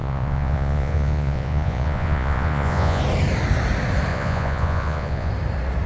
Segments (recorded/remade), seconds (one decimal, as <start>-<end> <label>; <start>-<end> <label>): 0.0-3.0 remade; 3.0-4.1 recorded; 4.1-5.3 remade; 5.3-5.9 recorded